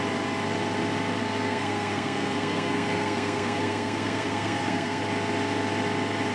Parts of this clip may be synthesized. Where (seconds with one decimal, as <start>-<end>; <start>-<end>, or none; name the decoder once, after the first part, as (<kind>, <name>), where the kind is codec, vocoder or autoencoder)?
1.2-5.0 (codec, SNAC)